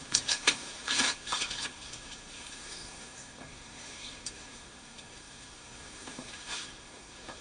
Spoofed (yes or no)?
yes